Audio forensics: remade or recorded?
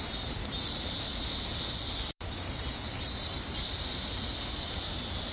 remade